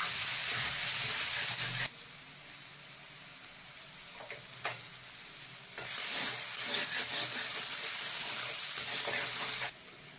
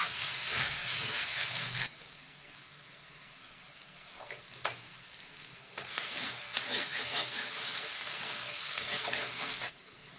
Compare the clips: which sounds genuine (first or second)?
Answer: first